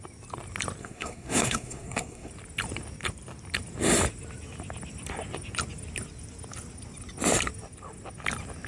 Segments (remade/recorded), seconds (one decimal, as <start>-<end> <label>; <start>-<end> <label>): 0.0-0.8 recorded; 0.8-2.3 remade; 2.3-8.7 recorded